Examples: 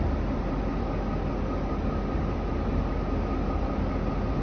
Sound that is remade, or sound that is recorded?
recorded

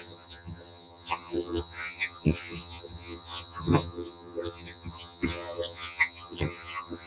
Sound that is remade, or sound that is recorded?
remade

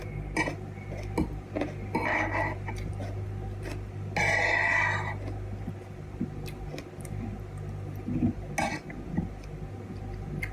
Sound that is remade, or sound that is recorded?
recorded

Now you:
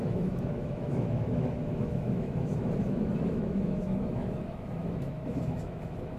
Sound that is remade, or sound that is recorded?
remade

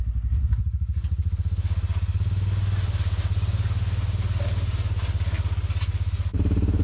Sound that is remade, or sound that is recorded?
recorded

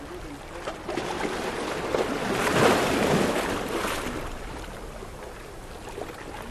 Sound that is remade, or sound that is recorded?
recorded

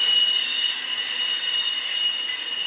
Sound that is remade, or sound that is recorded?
recorded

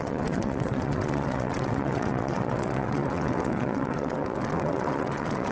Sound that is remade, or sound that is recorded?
remade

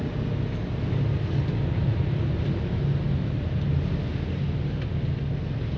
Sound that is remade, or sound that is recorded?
recorded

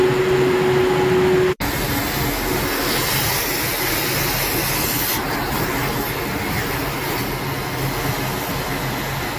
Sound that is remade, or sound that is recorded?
recorded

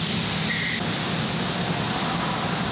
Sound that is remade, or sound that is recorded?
recorded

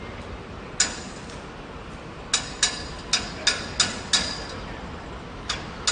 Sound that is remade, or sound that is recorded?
recorded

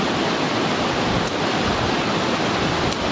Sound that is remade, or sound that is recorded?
recorded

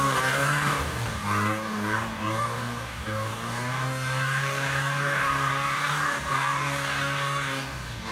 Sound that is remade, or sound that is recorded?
remade